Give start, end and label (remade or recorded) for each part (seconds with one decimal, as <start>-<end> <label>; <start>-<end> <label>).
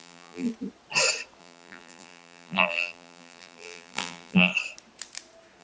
0.0-0.5 remade; 0.5-1.4 recorded; 1.4-4.5 remade; 4.5-5.6 recorded